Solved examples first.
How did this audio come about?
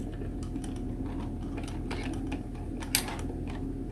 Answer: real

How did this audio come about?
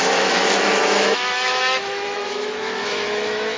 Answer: fake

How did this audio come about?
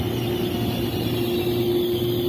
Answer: real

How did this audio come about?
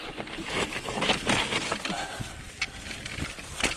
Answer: real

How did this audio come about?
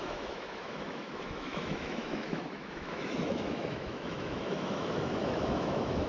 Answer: fake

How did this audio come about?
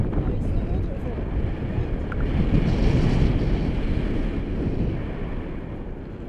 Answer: real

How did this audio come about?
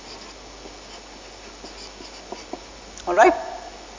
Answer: real